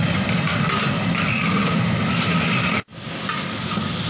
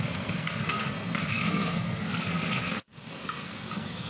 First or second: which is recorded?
first